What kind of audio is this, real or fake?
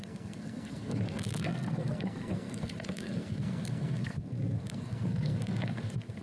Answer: fake